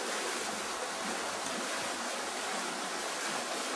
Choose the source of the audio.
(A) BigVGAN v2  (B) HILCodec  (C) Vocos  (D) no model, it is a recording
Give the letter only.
D